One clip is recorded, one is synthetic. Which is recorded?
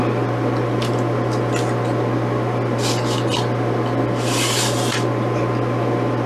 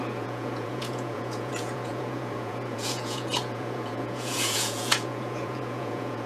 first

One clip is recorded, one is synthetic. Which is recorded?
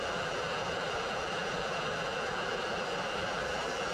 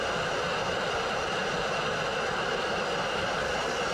second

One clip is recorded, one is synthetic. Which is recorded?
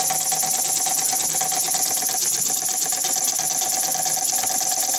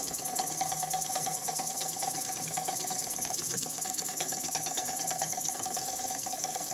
first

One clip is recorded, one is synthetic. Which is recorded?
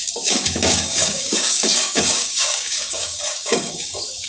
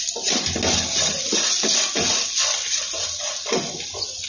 second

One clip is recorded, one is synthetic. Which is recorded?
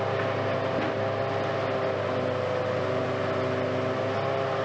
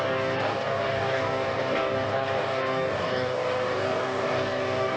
first